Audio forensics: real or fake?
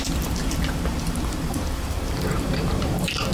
fake